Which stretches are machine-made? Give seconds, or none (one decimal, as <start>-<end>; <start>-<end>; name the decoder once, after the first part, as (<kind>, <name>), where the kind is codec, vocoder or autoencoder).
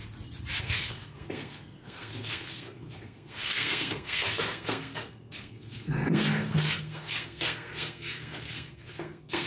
0.6-9.5 (codec, SNAC)